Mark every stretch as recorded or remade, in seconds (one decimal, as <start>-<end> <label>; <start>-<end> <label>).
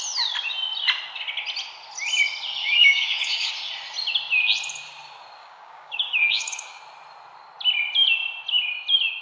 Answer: 0.0-2.6 recorded; 2.6-3.5 remade; 3.5-5.4 recorded; 5.4-6.8 remade; 6.8-9.2 recorded